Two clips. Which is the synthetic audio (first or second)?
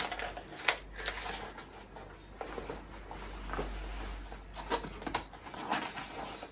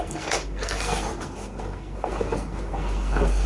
second